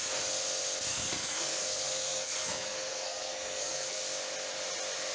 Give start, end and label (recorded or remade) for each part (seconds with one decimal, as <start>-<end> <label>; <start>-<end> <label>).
0.0-0.9 recorded; 0.9-4.0 remade; 4.0-5.1 recorded